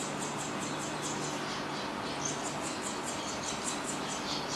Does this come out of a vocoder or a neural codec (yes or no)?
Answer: no